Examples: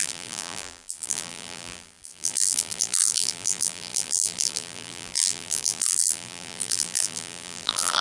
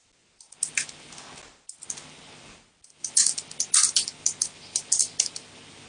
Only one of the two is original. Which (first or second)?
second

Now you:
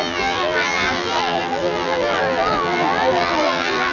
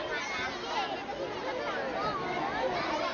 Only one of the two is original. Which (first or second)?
second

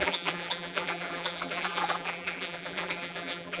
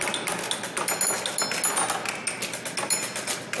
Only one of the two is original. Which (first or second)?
second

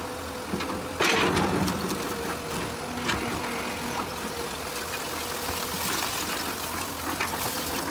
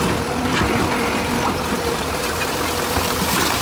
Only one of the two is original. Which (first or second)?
first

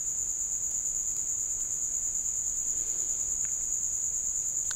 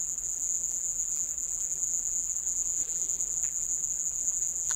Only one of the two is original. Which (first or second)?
first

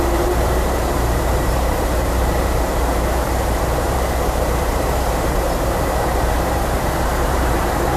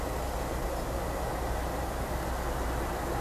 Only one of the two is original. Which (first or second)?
second